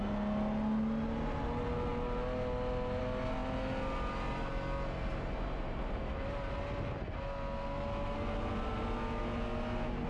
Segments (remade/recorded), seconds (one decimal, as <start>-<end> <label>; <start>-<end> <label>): 0.0-10.1 recorded